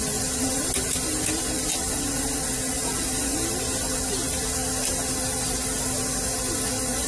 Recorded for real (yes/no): yes